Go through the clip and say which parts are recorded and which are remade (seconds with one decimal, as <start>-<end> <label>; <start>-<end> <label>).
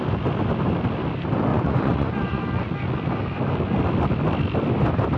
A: 0.0-1.5 recorded; 1.5-2.4 remade; 2.4-5.2 recorded